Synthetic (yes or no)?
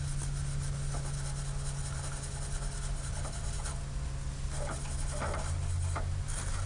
no